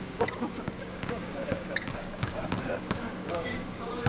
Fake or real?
fake